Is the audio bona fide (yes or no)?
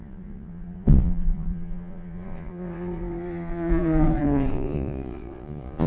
no